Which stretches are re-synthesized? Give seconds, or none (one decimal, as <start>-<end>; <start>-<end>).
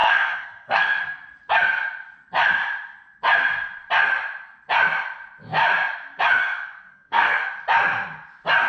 0.0-1.0; 6.4-7.4